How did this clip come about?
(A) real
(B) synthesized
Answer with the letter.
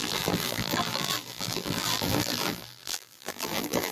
B